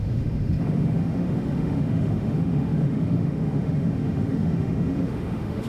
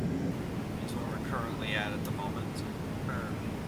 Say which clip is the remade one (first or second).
first